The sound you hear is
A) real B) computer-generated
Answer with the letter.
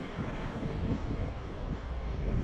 B